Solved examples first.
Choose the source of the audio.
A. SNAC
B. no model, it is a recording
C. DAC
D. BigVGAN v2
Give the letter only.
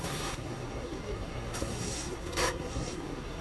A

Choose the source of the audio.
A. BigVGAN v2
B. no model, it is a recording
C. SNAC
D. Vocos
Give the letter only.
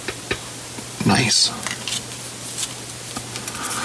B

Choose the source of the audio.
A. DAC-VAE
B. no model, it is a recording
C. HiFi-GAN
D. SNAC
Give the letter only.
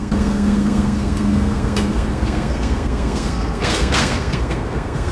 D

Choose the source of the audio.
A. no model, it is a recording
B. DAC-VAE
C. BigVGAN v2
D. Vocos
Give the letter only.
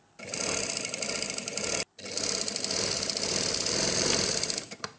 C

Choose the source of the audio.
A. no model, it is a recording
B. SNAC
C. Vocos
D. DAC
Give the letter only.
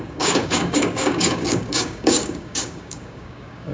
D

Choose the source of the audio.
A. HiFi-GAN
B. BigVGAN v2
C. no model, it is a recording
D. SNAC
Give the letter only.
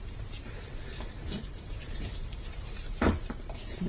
B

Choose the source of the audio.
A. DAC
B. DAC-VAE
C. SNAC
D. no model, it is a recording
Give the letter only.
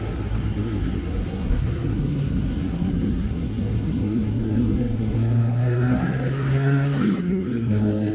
C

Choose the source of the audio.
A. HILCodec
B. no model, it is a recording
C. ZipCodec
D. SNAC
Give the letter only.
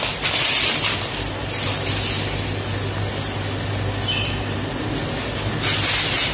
B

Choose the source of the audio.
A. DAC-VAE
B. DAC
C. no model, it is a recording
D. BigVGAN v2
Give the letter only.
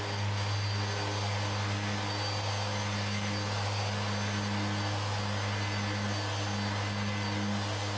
C